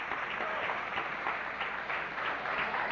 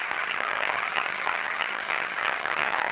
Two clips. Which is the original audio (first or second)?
first